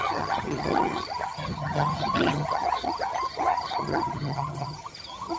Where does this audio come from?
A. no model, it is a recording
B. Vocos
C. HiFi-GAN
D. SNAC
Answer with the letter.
C